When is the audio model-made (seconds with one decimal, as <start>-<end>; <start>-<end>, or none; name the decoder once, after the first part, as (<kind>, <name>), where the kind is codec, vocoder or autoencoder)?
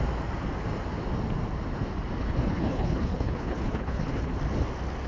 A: 2.2-4.4 (codec, HILCodec)